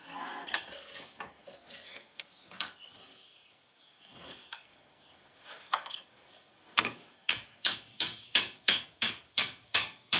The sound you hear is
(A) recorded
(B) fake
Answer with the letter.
B